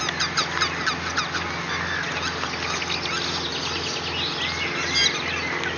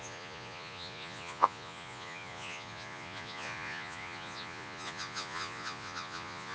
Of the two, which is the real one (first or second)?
first